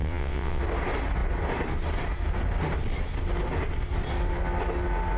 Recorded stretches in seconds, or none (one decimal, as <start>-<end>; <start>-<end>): 0.6-5.2